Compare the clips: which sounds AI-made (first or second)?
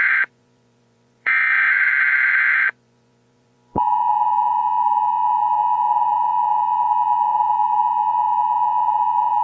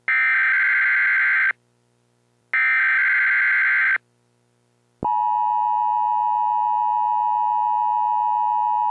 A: first